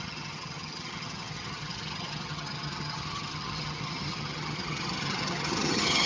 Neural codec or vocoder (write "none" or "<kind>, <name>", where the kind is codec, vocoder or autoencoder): vocoder, HiFi-GAN